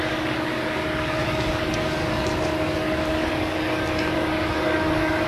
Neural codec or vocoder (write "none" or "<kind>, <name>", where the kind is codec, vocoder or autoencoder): codec, DAC